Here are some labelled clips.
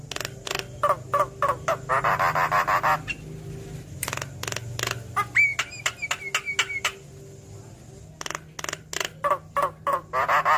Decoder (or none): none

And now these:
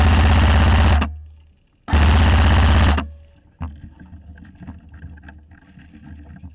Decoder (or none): none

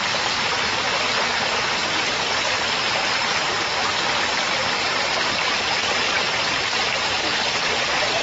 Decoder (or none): none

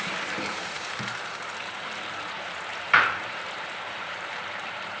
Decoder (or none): vocoder, BigVGAN v2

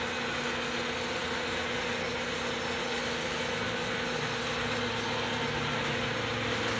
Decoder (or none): none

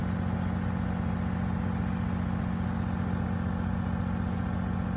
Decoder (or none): none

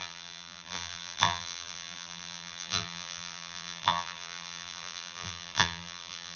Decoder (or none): vocoder, BigVGAN v2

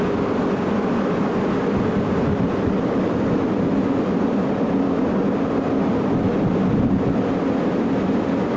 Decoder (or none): none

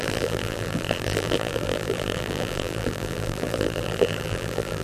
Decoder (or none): vocoder, BigVGAN v2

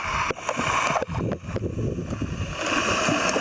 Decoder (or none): none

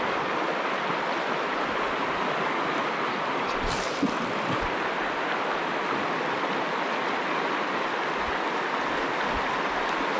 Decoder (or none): none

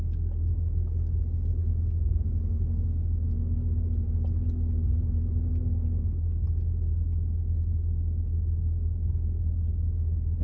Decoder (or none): none